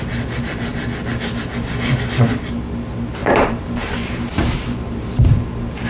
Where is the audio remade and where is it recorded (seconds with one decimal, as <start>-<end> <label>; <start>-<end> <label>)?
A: 0.0-3.2 recorded; 3.2-5.4 remade; 5.4-5.9 recorded